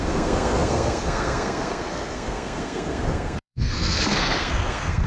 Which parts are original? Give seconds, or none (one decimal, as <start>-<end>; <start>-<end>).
none